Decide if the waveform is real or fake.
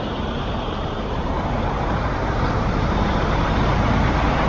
fake